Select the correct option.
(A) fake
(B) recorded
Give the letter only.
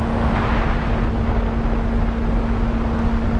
B